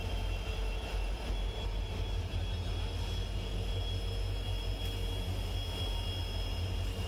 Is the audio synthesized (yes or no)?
no